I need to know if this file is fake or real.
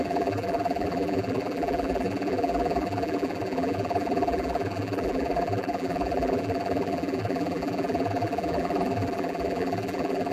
fake